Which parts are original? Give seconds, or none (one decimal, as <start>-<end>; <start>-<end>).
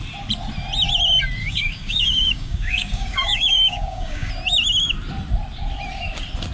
0.0-1.4; 4.3-6.5